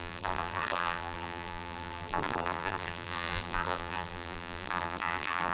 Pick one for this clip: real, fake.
fake